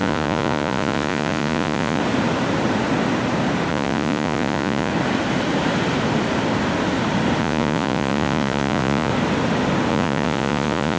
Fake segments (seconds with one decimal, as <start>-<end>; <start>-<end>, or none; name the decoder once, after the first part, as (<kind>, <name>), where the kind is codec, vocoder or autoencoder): 0.0-2.0 (vocoder, Vocos); 3.7-4.9; 7.4-9.1; 9.9-11.0